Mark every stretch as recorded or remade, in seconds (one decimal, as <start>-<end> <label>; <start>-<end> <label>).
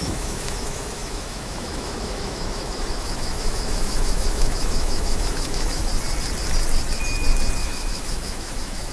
0.0-5.9 remade; 5.9-7.6 recorded; 7.6-8.9 remade